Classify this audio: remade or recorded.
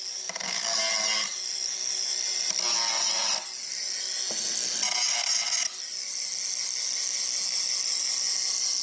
recorded